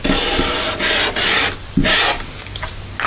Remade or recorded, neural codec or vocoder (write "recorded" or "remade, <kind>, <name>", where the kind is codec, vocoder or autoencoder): recorded